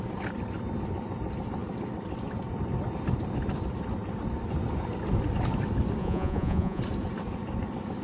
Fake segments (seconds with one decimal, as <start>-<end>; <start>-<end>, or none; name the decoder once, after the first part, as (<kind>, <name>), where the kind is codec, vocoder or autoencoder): 6.0-6.8 (vocoder, Vocos)